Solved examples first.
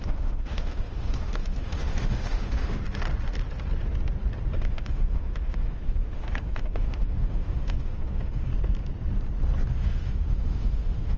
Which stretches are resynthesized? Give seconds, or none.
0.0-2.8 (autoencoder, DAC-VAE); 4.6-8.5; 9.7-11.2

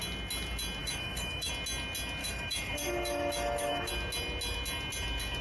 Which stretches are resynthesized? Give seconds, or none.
0.8-1.5 (autoencoder, DAC-VAE); 2.2-3.9

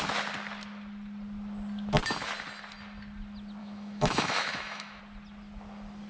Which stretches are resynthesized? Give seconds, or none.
3.6-5.0 (autoencoder, DAC-VAE)

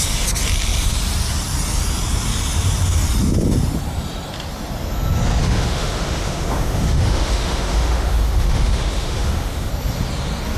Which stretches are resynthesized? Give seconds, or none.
5.4-9.7 (autoencoder, DAC-VAE)